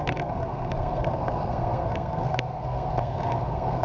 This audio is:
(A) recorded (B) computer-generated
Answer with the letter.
B